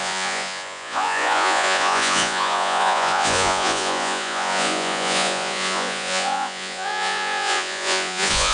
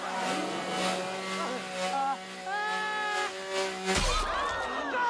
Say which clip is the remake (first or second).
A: first